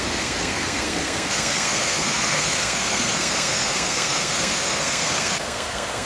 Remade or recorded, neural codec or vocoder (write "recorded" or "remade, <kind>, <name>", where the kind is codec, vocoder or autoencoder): remade, codec, SNAC